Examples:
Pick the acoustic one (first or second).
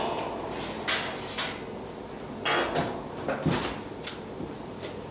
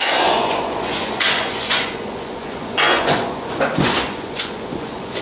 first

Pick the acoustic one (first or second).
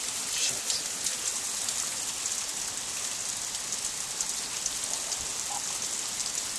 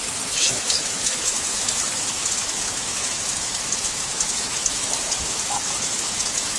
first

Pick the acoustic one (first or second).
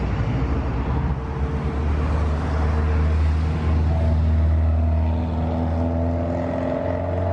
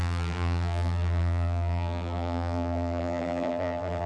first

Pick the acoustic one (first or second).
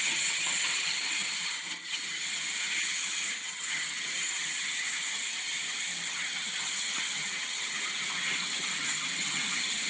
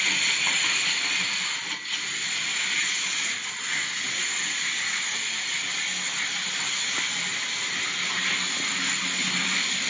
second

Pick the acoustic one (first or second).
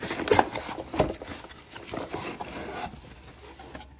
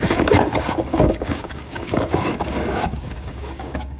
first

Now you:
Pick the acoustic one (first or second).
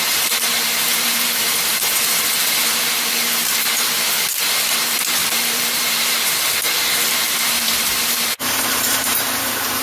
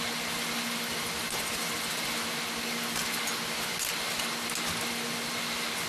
second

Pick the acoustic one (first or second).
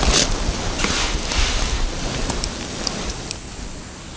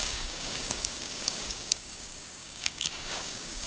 first